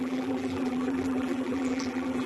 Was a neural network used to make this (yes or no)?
yes